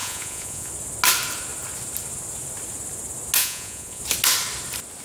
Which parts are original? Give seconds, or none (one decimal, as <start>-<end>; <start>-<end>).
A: 0.7-3.4; 4.0-5.0